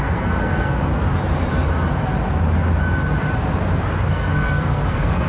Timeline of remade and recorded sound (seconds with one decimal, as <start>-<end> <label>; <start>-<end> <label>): 0.0-0.9 remade; 0.9-4.1 recorded; 4.1-5.3 remade